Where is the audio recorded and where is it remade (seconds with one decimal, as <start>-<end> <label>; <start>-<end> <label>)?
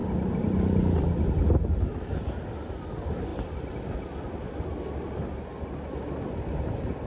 0.0-7.1 recorded